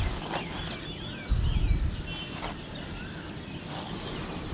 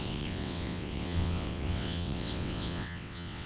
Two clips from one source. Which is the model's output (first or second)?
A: second